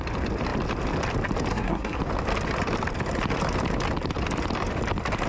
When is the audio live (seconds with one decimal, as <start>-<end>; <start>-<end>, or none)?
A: 0.0-1.5; 2.0-5.3